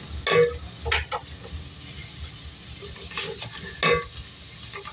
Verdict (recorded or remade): recorded